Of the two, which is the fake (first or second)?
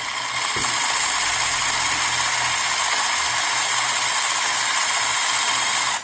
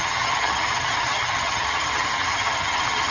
second